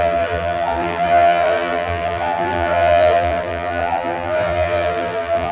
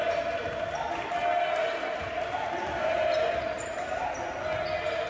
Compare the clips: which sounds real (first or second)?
second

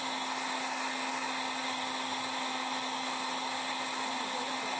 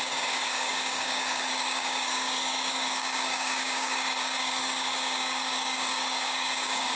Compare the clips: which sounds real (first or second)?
first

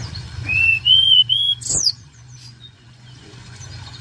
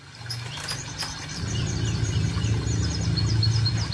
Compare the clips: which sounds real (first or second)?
second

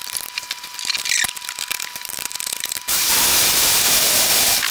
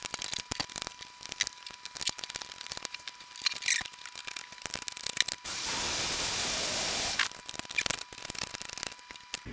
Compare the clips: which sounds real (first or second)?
second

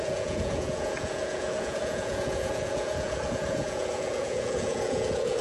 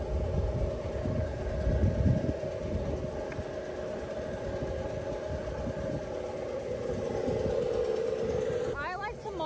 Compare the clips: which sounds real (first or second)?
second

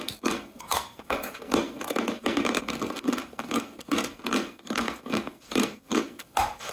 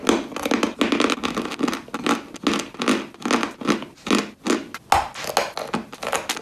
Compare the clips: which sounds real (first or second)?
second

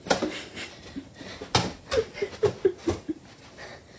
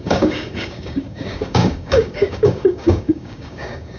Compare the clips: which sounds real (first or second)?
first